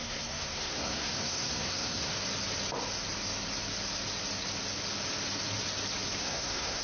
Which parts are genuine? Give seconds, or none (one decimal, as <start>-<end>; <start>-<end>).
2.1-6.2